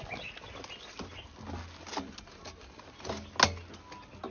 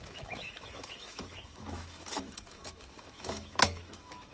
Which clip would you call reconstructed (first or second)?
second